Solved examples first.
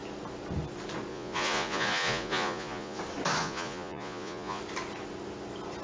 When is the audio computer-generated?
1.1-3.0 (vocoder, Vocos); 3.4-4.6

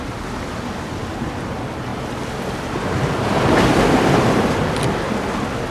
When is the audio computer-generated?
none

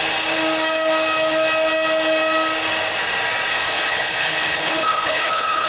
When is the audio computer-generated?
3.5-5.7 (codec, HILCodec)

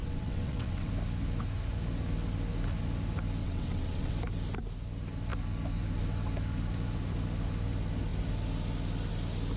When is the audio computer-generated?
0.0-0.9 (vocoder, WaveNeXt); 3.4-4.1